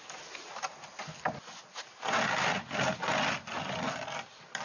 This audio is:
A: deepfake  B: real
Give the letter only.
B